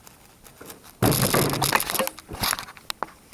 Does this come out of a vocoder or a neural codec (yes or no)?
no